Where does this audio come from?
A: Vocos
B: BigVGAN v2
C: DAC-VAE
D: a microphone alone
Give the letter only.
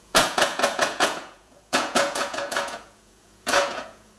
A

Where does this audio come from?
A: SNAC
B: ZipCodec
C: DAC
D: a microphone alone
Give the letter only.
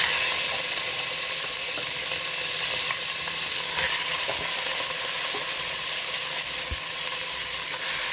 D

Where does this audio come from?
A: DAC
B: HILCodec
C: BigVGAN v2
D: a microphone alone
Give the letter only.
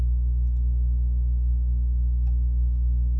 A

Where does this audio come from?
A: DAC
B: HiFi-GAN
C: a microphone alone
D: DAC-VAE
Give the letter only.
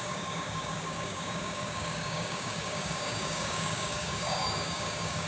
A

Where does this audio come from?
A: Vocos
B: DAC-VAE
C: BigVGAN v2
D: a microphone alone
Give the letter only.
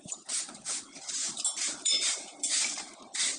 C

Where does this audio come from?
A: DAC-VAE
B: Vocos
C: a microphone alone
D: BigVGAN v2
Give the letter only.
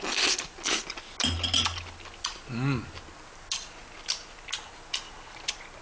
C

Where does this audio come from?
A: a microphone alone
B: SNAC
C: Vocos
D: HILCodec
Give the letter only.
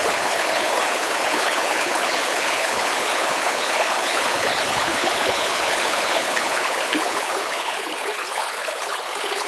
D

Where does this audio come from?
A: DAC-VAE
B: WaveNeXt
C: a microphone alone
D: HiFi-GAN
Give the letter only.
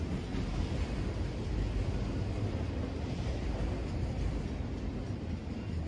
C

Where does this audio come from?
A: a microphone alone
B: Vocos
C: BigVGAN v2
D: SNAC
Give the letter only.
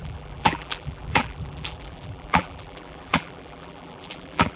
C